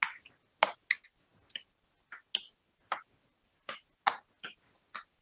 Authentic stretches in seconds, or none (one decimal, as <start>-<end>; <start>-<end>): 0.0-5.2